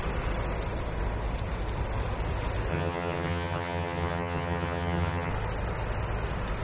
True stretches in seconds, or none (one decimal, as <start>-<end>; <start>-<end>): 0.0-2.7; 5.3-6.6